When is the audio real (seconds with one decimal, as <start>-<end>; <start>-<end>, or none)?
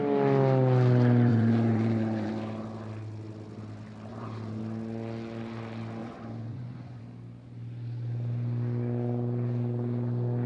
0.0-1.3; 2.3-4.1; 4.6-6.0; 7.0-10.5